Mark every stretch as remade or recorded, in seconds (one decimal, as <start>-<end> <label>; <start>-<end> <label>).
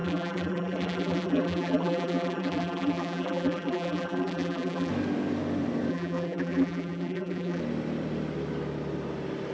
0.0-4.9 remade; 4.9-5.9 recorded; 5.9-7.6 remade; 7.6-9.5 recorded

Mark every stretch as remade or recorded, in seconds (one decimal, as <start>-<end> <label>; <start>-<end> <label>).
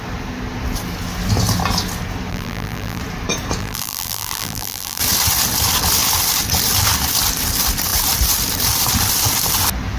0.0-2.3 recorded; 2.3-3.0 remade; 3.0-3.6 recorded; 3.6-5.0 remade; 5.0-10.0 recorded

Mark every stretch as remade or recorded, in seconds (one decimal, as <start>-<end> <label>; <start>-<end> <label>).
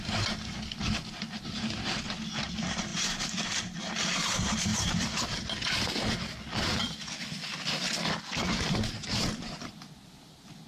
0.0-10.7 recorded